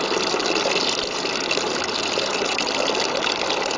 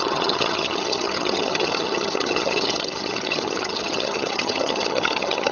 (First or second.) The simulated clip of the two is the second